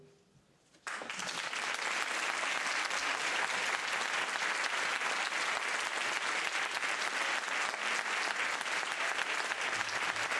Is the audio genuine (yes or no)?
yes